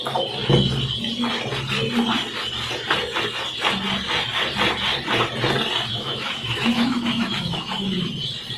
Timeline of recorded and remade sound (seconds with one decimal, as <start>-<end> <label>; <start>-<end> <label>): 0.0-5.9 recorded; 5.9-8.1 remade; 8.1-8.6 recorded